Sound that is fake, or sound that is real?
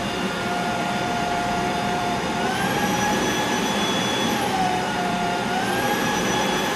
fake